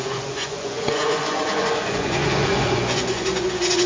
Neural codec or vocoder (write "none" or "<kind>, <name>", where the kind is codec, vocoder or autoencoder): vocoder, Vocos